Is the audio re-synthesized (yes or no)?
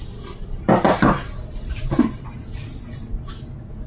no